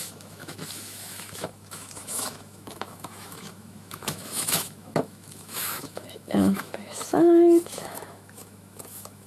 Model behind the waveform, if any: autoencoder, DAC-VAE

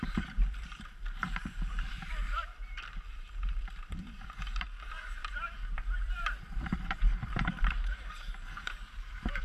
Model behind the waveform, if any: vocoder, BigVGAN v2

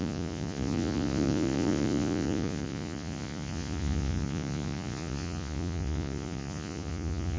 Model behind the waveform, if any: vocoder, Vocos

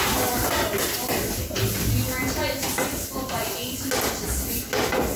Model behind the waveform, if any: none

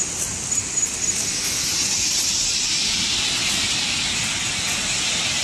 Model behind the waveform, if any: none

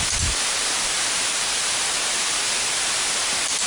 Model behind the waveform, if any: vocoder, BigVGAN v2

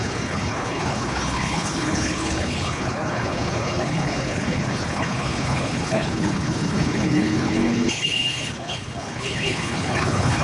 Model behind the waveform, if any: codec, HILCodec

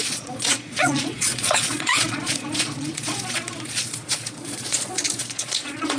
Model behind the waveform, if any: vocoder, Vocos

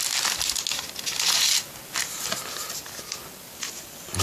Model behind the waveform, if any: none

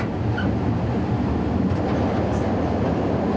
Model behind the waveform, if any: none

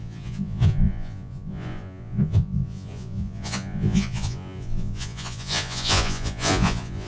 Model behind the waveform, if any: vocoder, Vocos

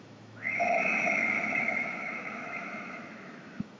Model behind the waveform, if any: autoencoder, DAC-VAE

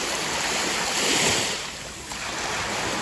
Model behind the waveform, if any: none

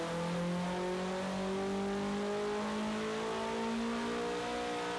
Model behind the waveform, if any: none